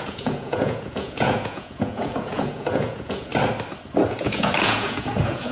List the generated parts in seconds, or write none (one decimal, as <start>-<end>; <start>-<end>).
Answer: 0.0-3.3; 4.1-5.5